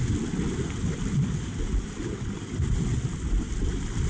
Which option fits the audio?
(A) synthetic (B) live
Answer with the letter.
B